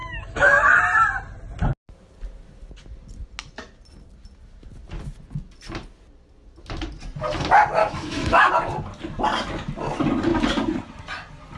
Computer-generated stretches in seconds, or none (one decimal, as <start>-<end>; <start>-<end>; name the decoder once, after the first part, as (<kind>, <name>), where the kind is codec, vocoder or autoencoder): 0.0-0.8 (autoencoder, DAC-VAE); 7.8-8.5